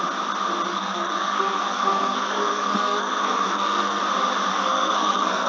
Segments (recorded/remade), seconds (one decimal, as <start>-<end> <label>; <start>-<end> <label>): 0.0-0.7 recorded; 0.7-4.0 remade; 4.0-4.5 recorded; 4.5-5.5 remade